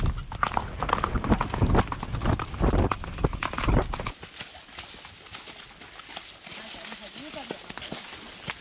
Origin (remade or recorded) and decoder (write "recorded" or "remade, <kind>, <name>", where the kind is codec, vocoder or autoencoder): recorded